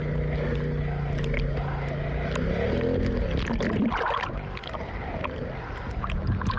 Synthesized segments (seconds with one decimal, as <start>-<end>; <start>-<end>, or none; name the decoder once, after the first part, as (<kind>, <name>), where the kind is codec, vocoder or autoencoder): none